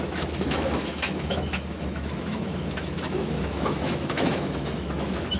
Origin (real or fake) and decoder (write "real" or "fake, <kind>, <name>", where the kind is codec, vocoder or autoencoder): fake, autoencoder, DAC-VAE